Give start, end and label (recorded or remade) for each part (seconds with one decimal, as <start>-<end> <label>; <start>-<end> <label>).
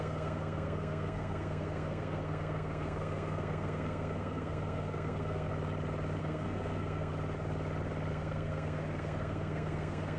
0.0-5.5 remade; 5.5-6.2 recorded; 6.2-7.1 remade; 7.1-8.1 recorded; 8.1-10.2 remade